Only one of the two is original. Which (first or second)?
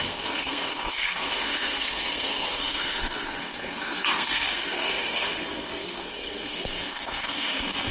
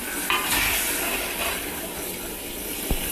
second